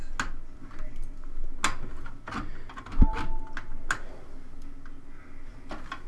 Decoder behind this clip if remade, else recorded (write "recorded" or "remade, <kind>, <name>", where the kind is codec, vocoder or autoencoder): recorded